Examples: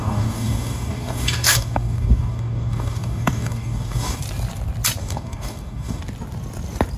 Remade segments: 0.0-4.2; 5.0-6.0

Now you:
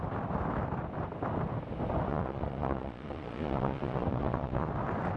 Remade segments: 2.1-4.7

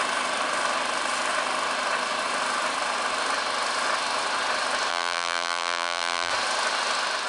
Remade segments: 4.9-6.3